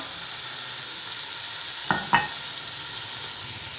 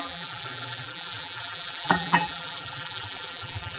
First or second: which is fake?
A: second